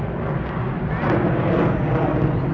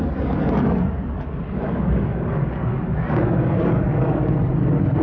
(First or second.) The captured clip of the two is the first